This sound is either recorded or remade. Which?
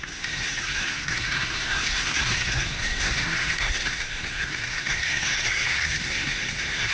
remade